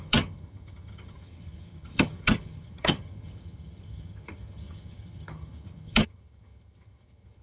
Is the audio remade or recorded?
remade